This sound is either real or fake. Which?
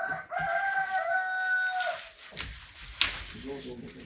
real